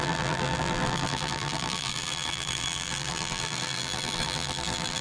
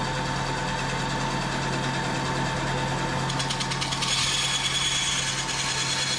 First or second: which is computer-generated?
first